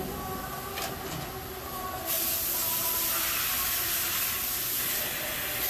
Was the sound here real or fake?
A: real